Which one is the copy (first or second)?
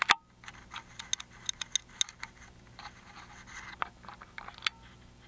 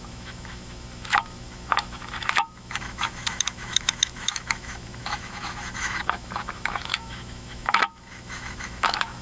second